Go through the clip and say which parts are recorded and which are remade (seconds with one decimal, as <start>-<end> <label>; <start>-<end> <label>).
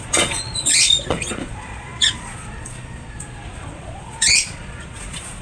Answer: 0.0-5.4 remade